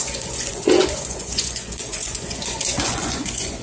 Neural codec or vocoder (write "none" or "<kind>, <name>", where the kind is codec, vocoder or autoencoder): vocoder, Vocos